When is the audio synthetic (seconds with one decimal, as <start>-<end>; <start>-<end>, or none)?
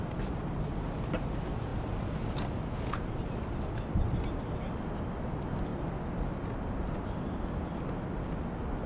none